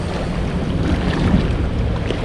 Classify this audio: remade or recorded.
recorded